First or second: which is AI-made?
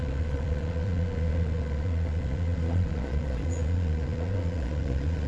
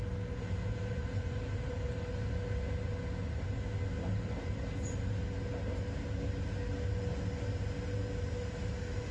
first